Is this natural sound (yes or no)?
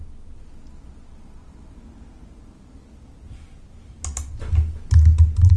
yes